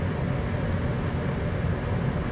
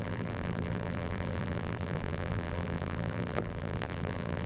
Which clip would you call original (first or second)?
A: first